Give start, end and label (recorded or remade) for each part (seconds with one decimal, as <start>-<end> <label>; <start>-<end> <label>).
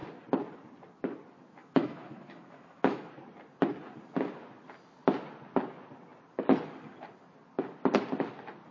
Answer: 0.0-1.6 recorded; 1.6-3.1 remade; 3.1-8.7 recorded